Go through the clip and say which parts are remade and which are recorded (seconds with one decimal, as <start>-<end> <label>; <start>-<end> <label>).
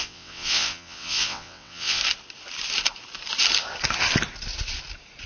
0.0-2.0 remade; 2.0-5.3 recorded